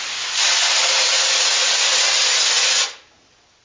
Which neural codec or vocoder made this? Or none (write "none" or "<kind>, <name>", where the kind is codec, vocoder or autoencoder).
none